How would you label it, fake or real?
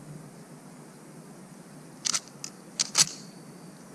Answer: real